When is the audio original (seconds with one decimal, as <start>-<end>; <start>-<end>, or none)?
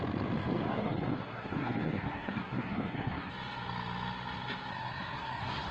0.0-0.7; 3.3-4.7